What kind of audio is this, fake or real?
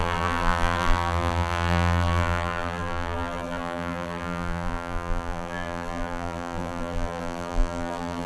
fake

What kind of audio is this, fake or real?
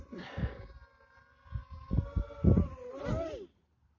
real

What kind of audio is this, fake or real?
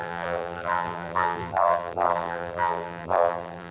fake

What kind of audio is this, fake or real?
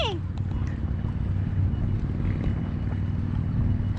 real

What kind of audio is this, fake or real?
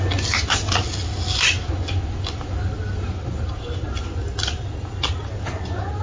real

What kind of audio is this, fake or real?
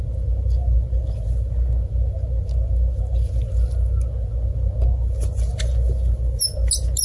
real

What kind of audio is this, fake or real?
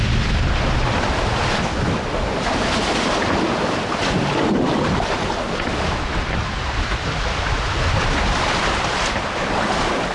fake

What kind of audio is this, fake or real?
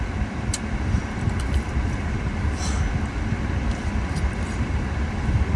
fake